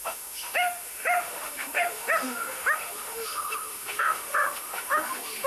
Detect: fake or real fake